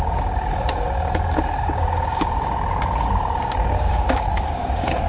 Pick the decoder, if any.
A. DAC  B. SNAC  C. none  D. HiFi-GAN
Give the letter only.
A